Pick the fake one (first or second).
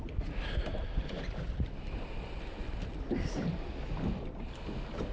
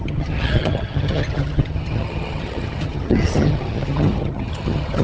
second